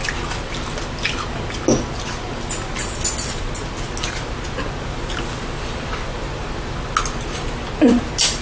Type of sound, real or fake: real